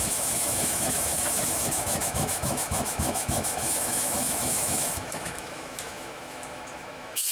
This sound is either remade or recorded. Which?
remade